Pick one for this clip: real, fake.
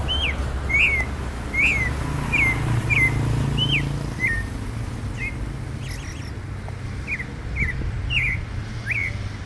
real